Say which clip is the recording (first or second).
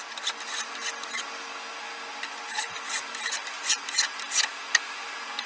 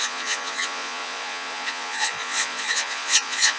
first